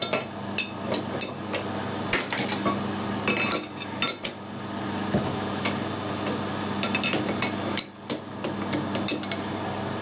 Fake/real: real